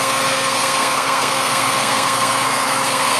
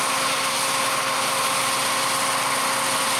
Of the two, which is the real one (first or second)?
second